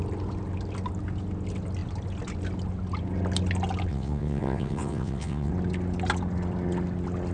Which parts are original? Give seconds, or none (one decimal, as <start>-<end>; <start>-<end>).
0.0-3.9; 5.5-7.3